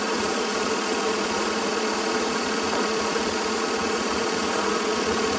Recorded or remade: remade